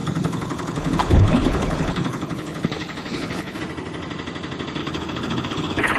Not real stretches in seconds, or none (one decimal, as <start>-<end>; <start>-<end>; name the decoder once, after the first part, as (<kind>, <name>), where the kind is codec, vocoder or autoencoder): 0.0-3.6 (codec, HILCodec); 4.8-6.0

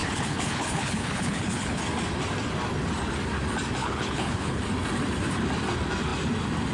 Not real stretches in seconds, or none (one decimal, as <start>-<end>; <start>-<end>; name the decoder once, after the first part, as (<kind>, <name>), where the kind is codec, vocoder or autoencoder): 0.0-1.8 (codec, HILCodec); 3.8-4.6

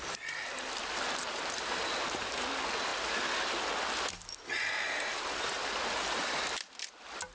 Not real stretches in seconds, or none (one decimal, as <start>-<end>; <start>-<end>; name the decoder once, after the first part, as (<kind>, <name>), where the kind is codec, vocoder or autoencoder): none

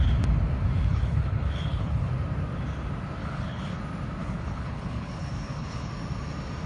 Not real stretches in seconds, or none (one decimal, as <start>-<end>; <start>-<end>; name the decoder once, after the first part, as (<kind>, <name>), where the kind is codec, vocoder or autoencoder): 0.9-2.1 (codec, HILCodec); 3.2-3.8; 4.2-5.9

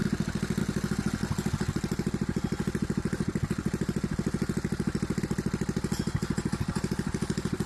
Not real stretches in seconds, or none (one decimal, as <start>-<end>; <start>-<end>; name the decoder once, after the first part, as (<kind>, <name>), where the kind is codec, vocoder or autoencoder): none

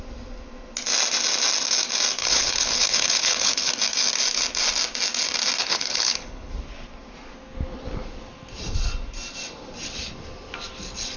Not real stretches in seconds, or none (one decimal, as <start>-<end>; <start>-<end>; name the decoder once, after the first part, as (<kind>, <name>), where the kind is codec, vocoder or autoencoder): 2.2-3.7 (codec, HILCodec); 5.6-6.5

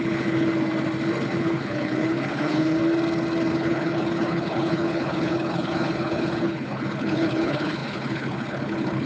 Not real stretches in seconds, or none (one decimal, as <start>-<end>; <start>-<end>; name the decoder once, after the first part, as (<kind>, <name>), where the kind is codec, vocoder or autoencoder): 0.0-0.5 (codec, HILCodec); 1.4-2.8; 3.5-9.1

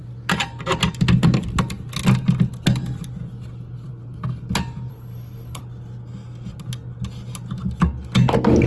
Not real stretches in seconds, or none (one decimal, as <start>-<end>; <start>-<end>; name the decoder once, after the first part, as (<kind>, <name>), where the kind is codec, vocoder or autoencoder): 4.9-5.6 (codec, HILCodec)